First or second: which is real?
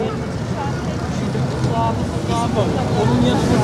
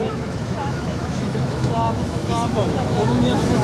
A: first